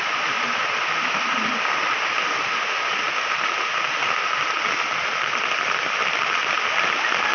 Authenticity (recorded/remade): recorded